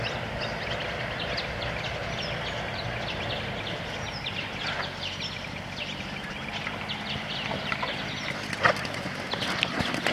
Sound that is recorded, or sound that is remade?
recorded